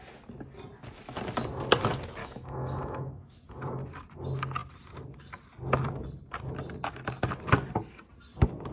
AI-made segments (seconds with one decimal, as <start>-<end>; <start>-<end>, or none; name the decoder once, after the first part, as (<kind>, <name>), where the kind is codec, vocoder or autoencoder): 2.2-3.5 (autoencoder, DAC-VAE)